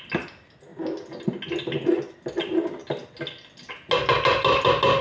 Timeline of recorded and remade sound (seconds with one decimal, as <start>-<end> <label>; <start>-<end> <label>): 0.0-5.0 recorded